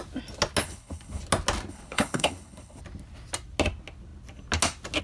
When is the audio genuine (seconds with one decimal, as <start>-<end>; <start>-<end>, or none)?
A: 0.0-0.6; 1.2-1.7; 2.8-5.0

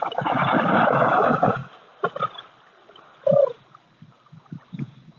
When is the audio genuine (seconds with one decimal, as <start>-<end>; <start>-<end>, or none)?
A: 1.6-4.7

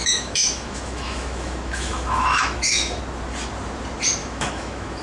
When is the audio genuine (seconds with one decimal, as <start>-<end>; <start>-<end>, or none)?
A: 3.0-4.2